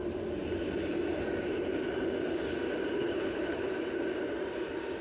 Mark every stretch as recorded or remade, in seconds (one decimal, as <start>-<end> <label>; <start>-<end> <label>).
0.0-3.0 recorded; 3.0-3.6 remade; 3.6-5.0 recorded